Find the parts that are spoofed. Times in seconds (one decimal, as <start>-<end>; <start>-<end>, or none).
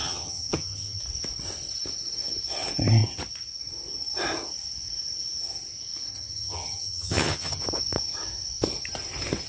0.0-1.0; 6.1-7.6